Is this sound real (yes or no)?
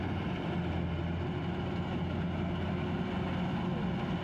yes